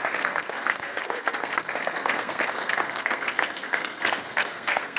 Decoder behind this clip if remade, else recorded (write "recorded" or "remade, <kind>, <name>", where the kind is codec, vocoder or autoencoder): remade, codec, SNAC